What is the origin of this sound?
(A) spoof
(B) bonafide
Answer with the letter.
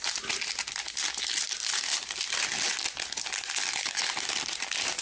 B